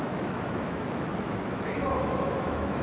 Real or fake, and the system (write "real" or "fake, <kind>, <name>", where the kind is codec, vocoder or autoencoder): fake, autoencoder, DAC-VAE